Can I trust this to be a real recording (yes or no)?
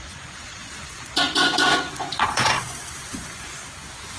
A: no